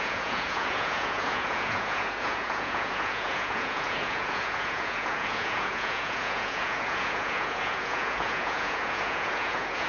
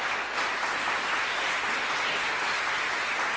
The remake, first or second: first